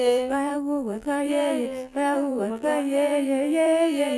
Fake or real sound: fake